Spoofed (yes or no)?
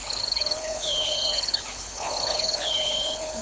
yes